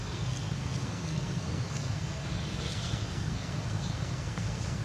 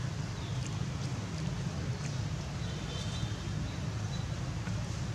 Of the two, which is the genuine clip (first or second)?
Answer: second